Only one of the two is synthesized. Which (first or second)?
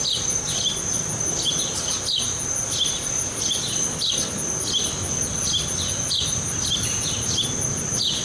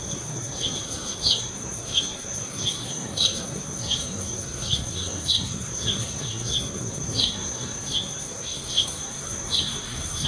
second